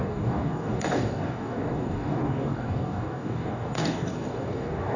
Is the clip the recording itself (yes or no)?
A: no